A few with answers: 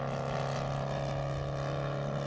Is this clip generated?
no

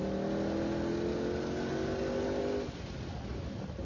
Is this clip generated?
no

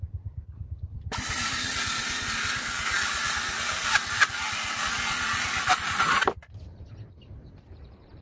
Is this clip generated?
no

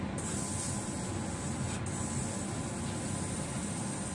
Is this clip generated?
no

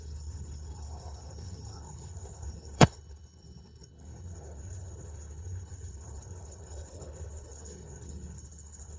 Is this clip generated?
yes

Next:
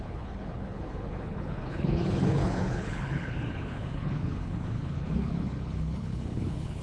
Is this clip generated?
yes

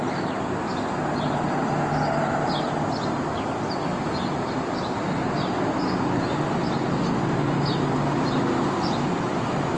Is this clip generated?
no